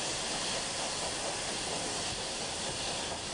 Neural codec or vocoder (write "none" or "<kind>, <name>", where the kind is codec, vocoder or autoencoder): none